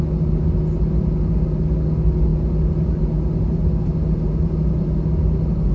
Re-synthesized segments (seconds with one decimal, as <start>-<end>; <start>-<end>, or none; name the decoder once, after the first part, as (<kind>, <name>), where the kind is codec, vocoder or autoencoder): none

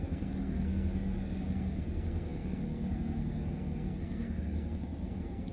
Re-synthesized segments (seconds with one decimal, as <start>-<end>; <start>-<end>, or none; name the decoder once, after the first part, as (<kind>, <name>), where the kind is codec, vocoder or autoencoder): 0.0-5.5 (codec, SNAC)

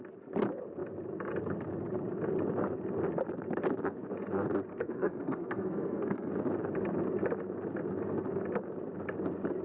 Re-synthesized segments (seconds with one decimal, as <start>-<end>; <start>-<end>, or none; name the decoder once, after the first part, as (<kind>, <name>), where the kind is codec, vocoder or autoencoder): 4.7-6.3 (codec, SNAC)

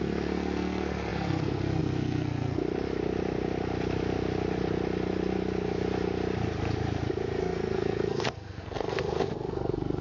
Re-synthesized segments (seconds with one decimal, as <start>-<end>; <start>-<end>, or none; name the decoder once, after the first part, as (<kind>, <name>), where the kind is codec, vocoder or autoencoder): 0.0-2.6 (codec, SNAC); 7.4-10.0

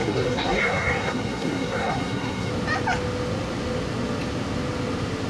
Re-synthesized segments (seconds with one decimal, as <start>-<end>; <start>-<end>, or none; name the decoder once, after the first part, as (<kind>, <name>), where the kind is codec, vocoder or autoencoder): 0.0-2.5 (codec, SNAC)

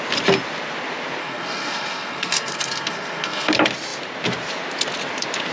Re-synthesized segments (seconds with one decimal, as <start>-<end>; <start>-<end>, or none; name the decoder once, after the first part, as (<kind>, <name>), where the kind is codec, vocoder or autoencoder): 1.2-3.5 (codec, SNAC)

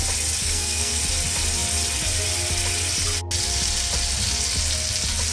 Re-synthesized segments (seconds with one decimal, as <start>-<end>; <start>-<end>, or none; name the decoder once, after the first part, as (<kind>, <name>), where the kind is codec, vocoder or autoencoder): 0.4-1.0 (codec, SNAC)